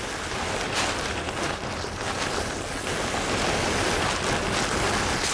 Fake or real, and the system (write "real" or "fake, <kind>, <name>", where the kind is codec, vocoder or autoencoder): real